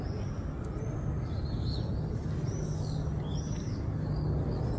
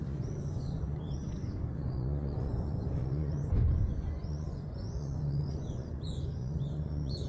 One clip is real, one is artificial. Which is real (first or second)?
first